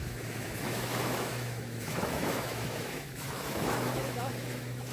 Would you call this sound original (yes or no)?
no